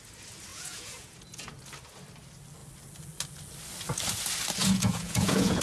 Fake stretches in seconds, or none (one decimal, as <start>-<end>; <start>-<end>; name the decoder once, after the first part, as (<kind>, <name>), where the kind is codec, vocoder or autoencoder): 0.5-1.5 (vocoder, Vocos); 4.6-5.6